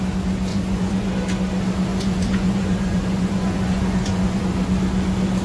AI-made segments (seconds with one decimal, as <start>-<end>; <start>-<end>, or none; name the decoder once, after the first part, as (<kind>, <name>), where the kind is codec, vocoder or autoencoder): 0.5-1.1 (vocoder, Vocos); 1.9-4.4